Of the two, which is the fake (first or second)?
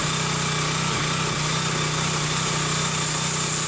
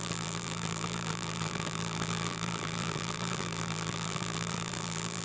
second